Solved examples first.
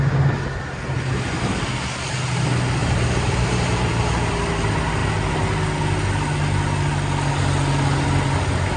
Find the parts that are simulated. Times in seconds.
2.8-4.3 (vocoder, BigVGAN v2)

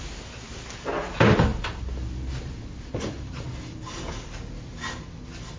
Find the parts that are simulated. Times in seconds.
1.5-4.0 (vocoder, BigVGAN v2)